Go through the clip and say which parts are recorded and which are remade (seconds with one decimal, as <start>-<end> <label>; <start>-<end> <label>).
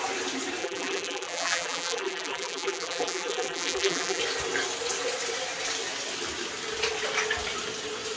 0.0-0.6 recorded; 0.6-4.2 remade; 4.2-8.2 recorded